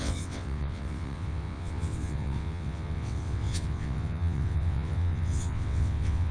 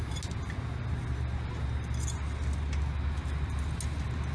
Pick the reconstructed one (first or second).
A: first